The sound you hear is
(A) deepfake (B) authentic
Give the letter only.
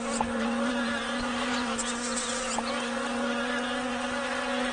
B